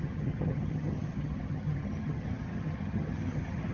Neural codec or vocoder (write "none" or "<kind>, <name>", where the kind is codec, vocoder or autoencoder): vocoder, HiFi-GAN